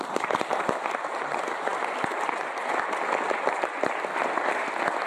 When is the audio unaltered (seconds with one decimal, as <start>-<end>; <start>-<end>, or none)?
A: 0.0-5.1